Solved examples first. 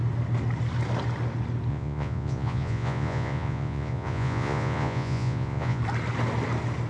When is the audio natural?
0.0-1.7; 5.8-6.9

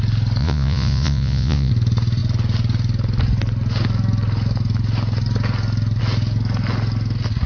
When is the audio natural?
0.0-0.4; 1.7-7.5